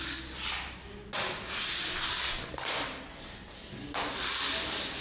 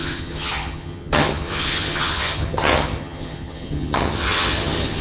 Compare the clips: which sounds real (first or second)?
first